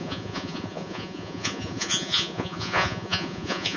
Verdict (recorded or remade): remade